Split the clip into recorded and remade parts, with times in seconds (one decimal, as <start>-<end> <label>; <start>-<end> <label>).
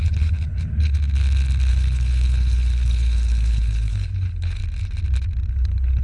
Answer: 0.0-1.0 remade; 1.0-1.7 recorded; 1.7-4.6 remade; 4.6-5.5 recorded; 5.5-6.0 remade